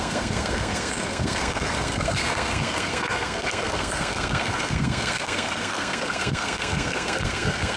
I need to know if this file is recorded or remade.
remade